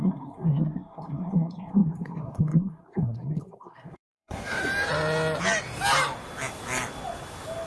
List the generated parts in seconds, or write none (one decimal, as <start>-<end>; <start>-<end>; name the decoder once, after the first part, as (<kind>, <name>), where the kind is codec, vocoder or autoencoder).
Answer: 0.0-4.6 (codec, SNAC)